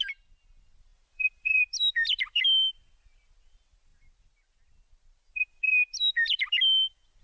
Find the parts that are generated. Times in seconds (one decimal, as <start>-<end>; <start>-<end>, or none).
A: 0.9-1.6